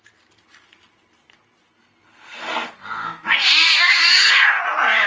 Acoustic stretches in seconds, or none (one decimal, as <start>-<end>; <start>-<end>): 0.0-1.8; 4.6-5.1